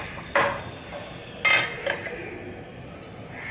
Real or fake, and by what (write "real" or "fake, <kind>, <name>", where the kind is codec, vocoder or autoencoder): real